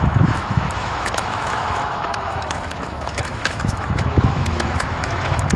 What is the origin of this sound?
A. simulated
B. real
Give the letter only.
A